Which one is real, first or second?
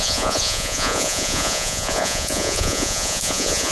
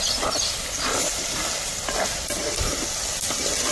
second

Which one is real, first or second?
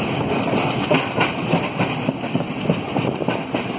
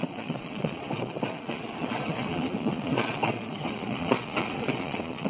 first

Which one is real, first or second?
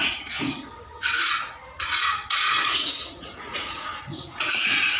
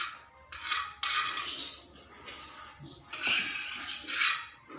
second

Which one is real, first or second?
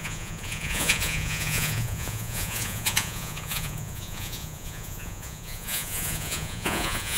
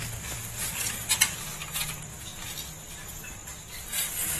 second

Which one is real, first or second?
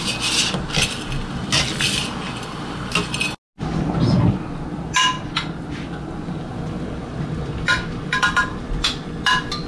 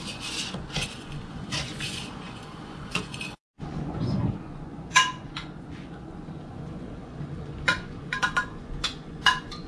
first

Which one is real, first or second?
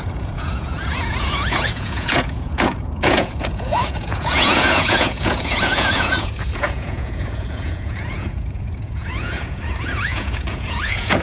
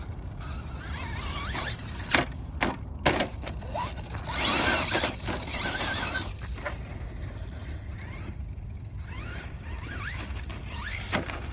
second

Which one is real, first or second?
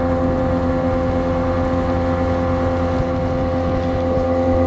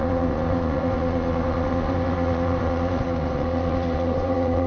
first